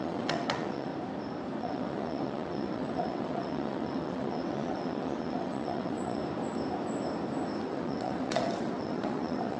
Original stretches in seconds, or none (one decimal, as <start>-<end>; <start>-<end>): 0.9-1.6; 6.2-7.6